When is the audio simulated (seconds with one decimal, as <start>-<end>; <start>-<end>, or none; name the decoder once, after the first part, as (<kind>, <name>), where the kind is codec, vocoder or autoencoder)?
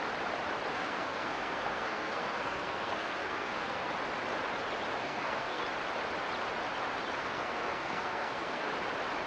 0.7-3.9 (codec, SNAC); 5.0-5.6; 7.2-8.7